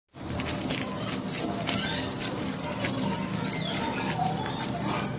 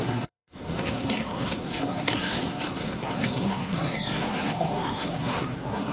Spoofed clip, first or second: second